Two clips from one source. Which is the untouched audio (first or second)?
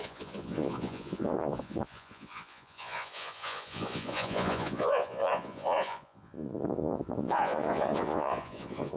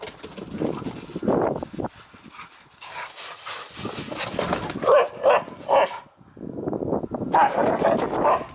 second